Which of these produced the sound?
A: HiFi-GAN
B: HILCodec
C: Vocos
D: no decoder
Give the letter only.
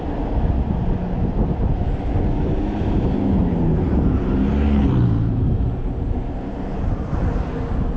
D